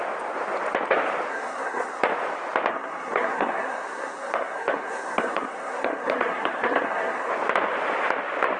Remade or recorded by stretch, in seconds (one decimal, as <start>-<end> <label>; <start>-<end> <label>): 0.0-1.3 recorded; 1.3-2.0 remade; 2.0-2.7 recorded; 2.7-7.3 remade; 7.3-8.6 recorded